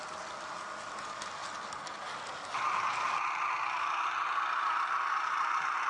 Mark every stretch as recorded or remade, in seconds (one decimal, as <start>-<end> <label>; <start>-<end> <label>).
0.0-5.9 remade